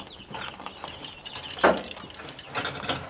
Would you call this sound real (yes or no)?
yes